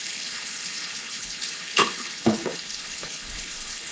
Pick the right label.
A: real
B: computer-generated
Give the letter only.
B